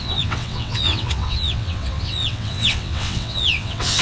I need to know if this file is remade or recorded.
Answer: remade